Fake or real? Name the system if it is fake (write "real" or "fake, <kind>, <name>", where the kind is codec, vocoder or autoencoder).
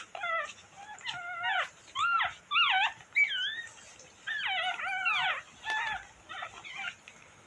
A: real